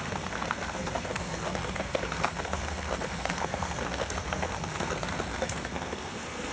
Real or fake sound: fake